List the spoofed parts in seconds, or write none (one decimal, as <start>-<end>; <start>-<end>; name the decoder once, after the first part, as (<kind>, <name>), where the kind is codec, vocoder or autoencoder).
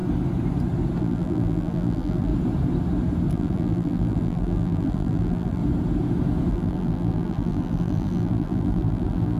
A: 1.0-2.3 (vocoder, BigVGAN v2); 3.3-5.6; 6.5-9.4